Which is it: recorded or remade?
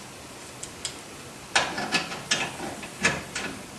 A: recorded